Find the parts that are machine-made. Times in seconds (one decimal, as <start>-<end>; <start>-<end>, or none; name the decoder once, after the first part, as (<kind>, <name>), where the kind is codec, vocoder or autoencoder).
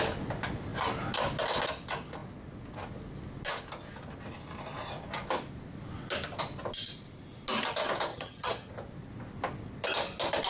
8.1-8.7 (vocoder, HiFi-GAN)